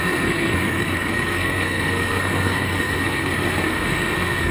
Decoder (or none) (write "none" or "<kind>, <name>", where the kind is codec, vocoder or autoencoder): codec, SNAC